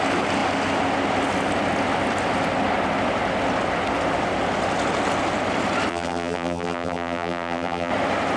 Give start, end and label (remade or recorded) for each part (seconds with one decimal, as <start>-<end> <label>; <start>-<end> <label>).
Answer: 0.0-5.9 recorded; 5.9-7.9 remade; 7.9-8.4 recorded